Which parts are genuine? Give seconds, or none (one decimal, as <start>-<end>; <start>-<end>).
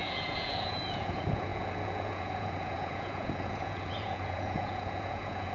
none